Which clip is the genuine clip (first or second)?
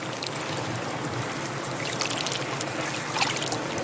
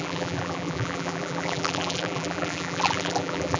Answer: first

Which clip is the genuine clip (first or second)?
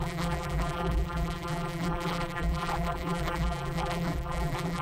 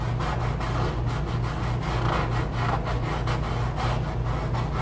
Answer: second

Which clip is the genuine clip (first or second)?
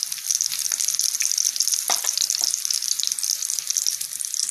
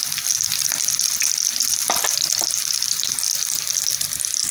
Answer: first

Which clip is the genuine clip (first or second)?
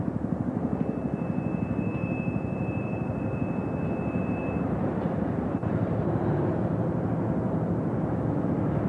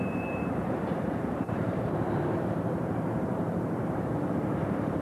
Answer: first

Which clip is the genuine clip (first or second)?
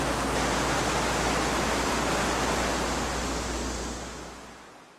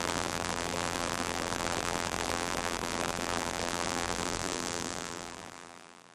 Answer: first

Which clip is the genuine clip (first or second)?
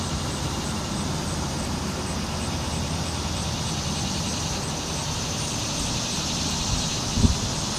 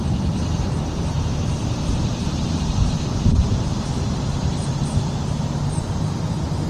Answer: first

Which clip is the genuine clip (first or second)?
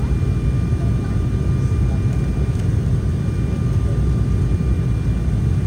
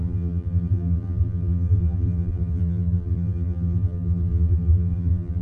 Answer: first